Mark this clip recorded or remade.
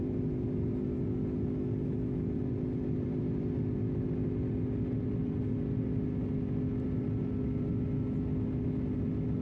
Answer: recorded